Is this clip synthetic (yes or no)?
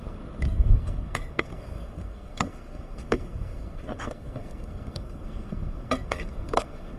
yes